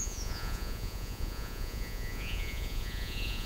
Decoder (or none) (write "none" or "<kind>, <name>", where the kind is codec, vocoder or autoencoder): vocoder, Vocos